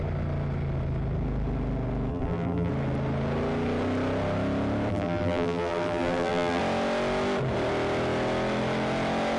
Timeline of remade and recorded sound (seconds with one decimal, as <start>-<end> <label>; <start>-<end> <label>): 0.0-2.1 recorded; 2.1-2.7 remade; 2.7-4.9 recorded; 4.9-6.6 remade; 6.6-9.4 recorded